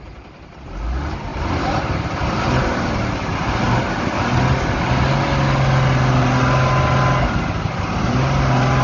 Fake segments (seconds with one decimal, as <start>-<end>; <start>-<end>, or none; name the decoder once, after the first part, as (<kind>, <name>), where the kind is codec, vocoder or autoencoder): 1.3-4.0 (vocoder, BigVGAN v2)

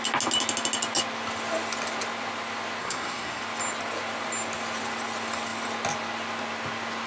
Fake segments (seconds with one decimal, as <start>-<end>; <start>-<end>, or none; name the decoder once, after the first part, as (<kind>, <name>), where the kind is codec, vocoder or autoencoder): 2.8-3.4 (codec, SNAC)

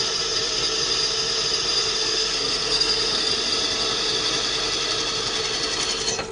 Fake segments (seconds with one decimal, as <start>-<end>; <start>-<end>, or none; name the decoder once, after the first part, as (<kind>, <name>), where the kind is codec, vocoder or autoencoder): 2.0-3.3 (codec, SNAC)

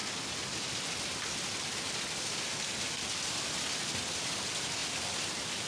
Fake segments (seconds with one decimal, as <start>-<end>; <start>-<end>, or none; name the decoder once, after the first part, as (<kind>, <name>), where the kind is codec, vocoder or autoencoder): none

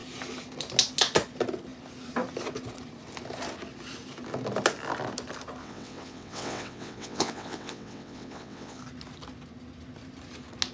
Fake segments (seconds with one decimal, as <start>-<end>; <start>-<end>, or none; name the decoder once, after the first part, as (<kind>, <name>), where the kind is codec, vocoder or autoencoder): 5.6-8.8 (vocoder, WaveNeXt)

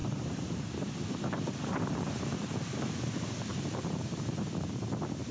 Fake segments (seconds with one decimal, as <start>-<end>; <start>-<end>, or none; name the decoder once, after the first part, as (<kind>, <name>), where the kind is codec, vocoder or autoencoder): 0.0-2.4 (vocoder, BigVGAN v2); 3.5-4.4

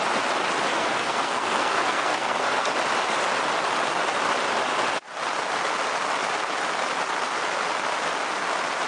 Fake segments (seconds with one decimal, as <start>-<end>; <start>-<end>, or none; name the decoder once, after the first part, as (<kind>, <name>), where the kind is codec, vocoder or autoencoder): 0.7-2.7 (codec, SNAC)